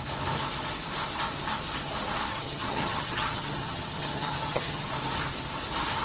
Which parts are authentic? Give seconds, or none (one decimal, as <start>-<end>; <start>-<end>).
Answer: 0.0-2.3; 4.9-6.0